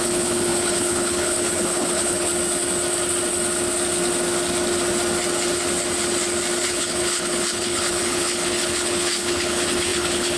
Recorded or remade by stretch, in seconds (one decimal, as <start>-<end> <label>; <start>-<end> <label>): 0.0-2.3 remade; 2.3-6.7 recorded; 6.7-10.4 remade